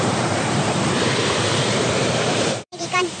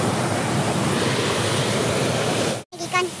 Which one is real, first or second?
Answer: second